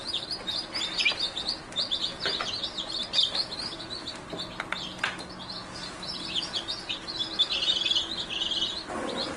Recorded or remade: recorded